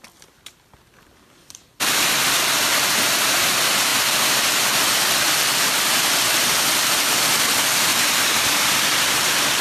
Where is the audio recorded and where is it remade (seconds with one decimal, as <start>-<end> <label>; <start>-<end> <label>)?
0.0-3.9 remade; 3.9-4.9 recorded; 4.9-9.6 remade